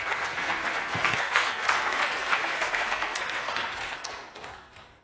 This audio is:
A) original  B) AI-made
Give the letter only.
B